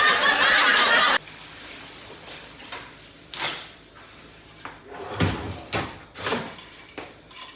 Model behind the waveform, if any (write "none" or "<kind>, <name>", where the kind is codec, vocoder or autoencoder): vocoder, BigVGAN v2